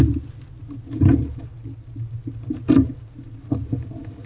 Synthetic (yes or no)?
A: no